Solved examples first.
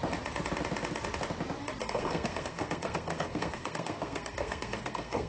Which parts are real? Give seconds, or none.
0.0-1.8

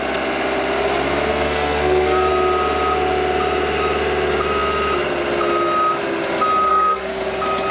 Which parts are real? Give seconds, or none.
0.0-1.3; 2.3-6.7; 7.2-7.7

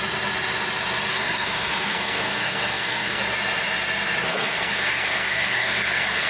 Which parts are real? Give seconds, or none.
0.0-1.1; 3.2-4.3

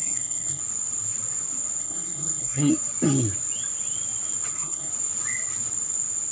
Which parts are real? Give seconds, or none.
0.6-1.8; 2.7-4.5; 4.9-6.3

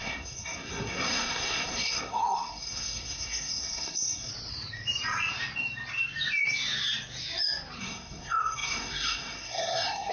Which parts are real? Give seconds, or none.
4.3-7.8